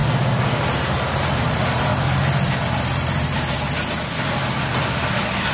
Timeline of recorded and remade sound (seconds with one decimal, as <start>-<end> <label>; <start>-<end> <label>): 0.0-1.1 recorded; 1.1-1.9 remade; 1.9-5.5 recorded